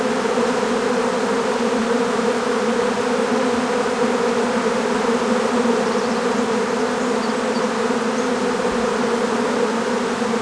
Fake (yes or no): no